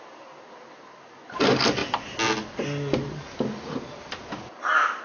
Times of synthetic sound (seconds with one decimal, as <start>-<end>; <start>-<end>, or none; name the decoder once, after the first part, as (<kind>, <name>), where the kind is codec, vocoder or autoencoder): none